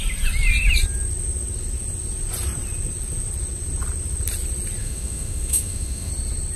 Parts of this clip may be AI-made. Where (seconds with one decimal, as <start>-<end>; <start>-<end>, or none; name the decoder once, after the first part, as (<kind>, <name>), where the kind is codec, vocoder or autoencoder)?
4.8-6.1 (autoencoder, DAC-VAE)